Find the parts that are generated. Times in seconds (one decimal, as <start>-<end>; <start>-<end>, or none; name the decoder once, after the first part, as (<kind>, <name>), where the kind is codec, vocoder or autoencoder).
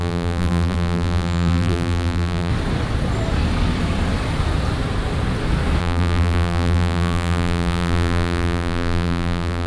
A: 0.0-2.5 (vocoder, BigVGAN v2); 5.8-9.7